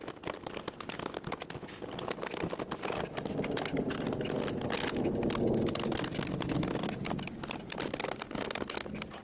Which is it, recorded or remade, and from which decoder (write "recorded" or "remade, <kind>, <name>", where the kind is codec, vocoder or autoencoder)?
recorded